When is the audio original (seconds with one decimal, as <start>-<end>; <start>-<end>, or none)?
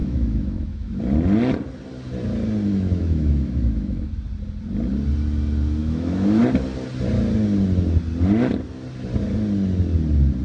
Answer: 1.0-2.7; 4.1-5.8; 6.4-10.4